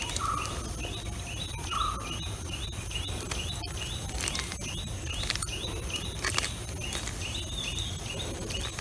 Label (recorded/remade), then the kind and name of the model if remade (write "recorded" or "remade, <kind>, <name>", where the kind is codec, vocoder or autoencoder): recorded